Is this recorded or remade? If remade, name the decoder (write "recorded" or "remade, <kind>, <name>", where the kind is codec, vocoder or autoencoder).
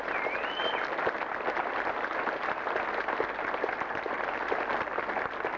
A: recorded